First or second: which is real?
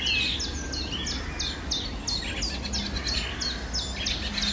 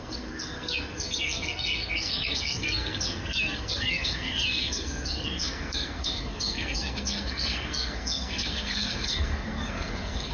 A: first